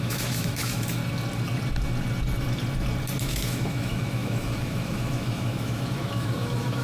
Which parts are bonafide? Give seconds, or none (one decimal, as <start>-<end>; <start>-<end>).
1.0-3.2